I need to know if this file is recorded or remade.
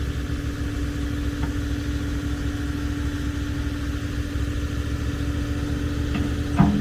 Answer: recorded